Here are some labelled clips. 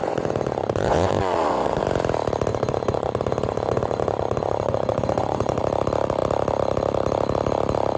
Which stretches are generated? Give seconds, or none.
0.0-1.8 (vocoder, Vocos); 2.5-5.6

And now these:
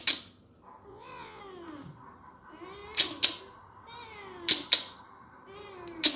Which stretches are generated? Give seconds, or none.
0.9-1.4 (vocoder, Vocos)

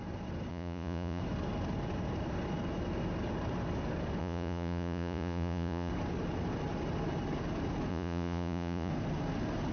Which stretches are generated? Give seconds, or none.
0.5-1.2 (vocoder, Vocos); 4.2-5.9; 7.9-8.9

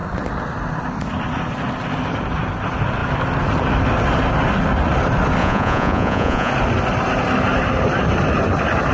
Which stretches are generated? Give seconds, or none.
5.4-6.5 (vocoder, Vocos)

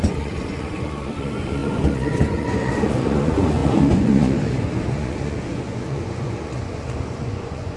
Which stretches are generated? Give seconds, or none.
0.0-7.8 (vocoder, Vocos)

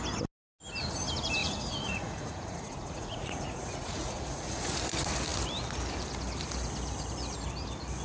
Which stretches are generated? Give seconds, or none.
1.4-4.8 (vocoder, Vocos)